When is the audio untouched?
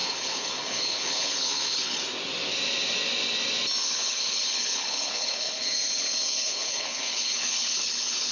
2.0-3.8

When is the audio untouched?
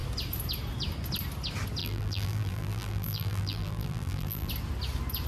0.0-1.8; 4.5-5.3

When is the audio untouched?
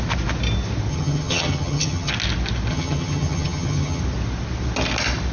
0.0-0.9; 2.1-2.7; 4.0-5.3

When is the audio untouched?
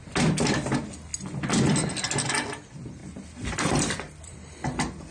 0.0-3.0; 4.6-5.1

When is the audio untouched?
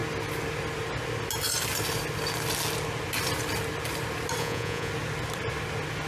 0.0-4.4; 4.9-6.1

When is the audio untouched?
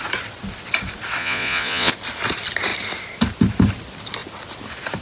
0.0-1.2; 1.9-5.0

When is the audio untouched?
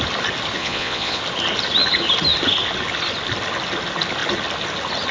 0.0-0.6; 1.2-5.1